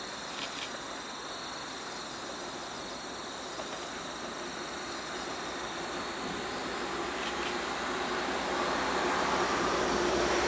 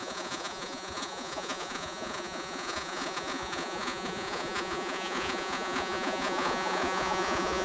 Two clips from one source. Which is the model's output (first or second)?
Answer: second